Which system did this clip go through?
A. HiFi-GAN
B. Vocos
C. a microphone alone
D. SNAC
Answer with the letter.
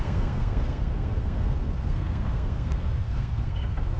D